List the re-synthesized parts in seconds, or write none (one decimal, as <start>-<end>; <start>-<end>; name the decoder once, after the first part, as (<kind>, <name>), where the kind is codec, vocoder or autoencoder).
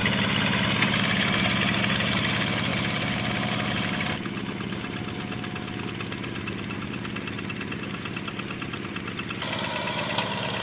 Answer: none